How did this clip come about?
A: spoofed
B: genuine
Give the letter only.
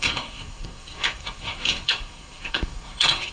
A